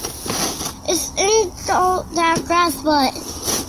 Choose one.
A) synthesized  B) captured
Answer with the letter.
B